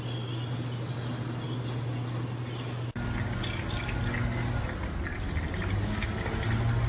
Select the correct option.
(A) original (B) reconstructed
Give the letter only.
A